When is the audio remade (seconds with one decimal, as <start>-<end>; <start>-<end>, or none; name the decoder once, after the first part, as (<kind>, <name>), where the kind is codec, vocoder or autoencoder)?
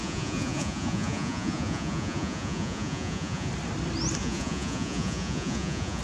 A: 0.0-3.5 (vocoder, Vocos); 4.2-6.0